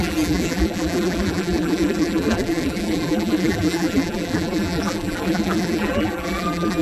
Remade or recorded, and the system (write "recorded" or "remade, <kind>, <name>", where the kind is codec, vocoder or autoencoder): remade, vocoder, BigVGAN v2